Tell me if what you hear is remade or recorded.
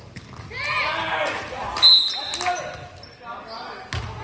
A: recorded